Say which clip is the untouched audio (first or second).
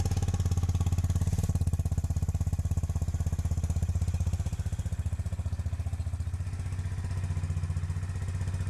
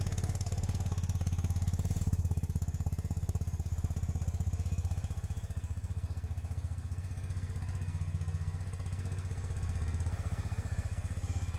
first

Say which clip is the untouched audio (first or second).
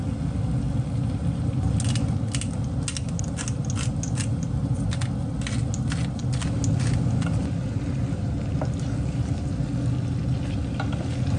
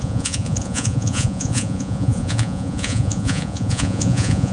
first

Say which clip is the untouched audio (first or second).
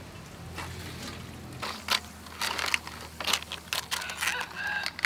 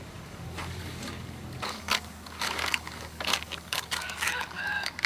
first